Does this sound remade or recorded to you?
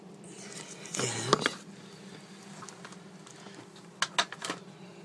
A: recorded